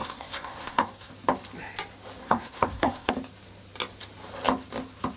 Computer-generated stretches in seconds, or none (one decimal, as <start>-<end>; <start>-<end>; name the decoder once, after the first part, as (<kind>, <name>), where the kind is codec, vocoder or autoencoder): 0.0-1.1 (codec, SNAC); 2.2-3.1